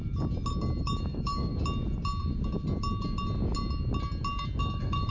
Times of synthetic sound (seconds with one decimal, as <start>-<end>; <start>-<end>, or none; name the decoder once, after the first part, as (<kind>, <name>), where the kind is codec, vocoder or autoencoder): 0.8-1.5 (autoencoder, DAC-VAE); 4.6-5.1